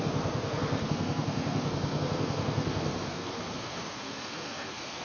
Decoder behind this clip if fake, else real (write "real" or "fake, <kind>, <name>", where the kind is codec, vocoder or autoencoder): fake, codec, SNAC